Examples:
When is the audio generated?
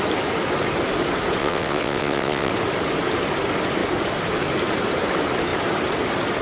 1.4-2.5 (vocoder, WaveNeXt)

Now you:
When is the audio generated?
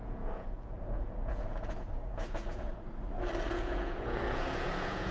0.0-2.7 (vocoder, Vocos); 3.5-5.1